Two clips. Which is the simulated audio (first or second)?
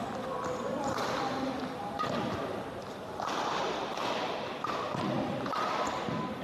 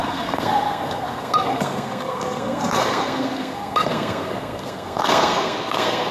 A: second